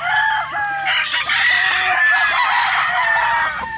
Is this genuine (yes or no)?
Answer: yes